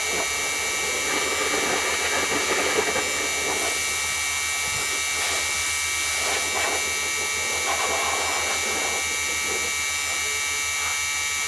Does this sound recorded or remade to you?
recorded